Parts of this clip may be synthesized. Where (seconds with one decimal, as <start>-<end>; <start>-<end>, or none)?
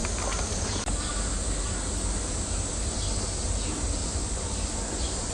4.0-5.3